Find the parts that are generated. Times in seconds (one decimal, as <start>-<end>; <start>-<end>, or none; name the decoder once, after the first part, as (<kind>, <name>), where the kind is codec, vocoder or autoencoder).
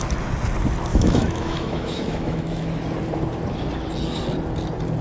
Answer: 0.9-2.7 (autoencoder, DAC-VAE)